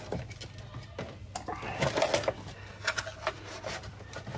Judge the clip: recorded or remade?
recorded